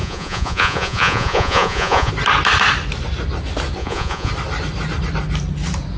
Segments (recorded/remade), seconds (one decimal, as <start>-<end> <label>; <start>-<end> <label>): 0.0-2.1 remade; 2.1-3.8 recorded; 3.8-4.3 remade; 4.3-6.0 recorded